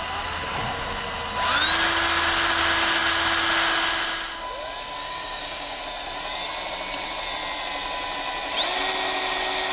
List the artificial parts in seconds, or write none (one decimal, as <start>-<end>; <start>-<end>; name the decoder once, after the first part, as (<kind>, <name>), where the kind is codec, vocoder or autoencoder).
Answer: 5.0-5.8 (codec, DAC)